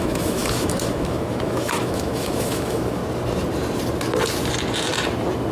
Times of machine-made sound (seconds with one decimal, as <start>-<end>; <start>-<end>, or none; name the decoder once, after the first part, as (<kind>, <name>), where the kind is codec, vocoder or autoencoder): 0.0-3.0 (autoencoder, DAC-VAE)